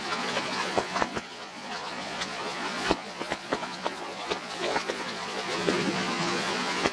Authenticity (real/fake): fake